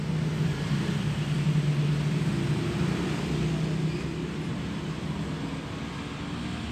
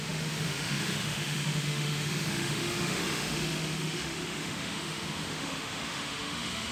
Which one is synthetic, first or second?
second